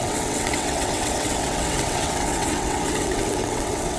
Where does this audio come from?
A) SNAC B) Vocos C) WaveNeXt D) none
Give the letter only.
C